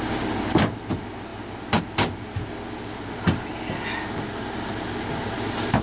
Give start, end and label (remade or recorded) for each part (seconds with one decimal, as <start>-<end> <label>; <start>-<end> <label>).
0.0-5.8 recorded